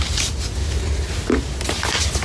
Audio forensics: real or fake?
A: real